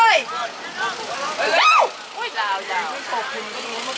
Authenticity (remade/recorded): recorded